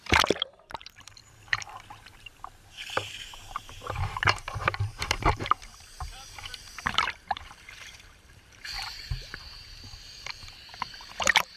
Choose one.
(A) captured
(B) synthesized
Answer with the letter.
B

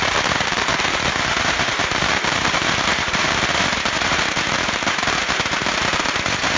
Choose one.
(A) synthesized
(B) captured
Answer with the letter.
A